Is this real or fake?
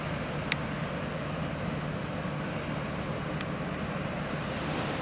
real